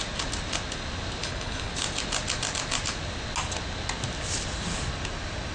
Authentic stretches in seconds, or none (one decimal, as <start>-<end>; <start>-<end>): 0.0-1.2; 1.7-5.5